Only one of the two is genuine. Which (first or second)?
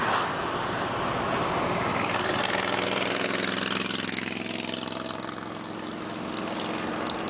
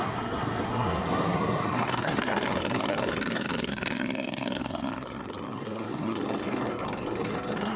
first